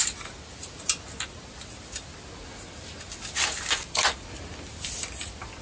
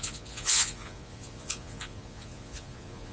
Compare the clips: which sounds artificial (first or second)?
second